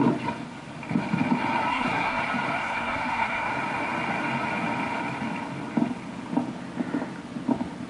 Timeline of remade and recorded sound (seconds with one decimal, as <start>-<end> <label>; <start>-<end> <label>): 0.0-1.7 recorded; 1.7-2.2 remade; 2.2-2.6 recorded; 2.6-3.5 remade; 3.5-7.9 recorded